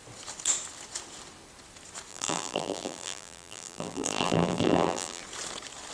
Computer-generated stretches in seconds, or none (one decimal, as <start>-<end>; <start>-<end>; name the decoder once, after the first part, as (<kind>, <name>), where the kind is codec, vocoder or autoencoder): 2.1-5.2 (vocoder, BigVGAN v2)